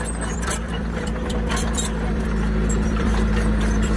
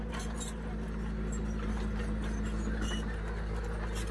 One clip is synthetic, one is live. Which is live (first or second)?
second